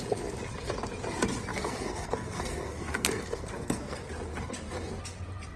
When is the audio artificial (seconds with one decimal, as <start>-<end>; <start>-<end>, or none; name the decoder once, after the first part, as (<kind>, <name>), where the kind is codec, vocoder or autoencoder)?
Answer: 1.5-4.0 (codec, SNAC)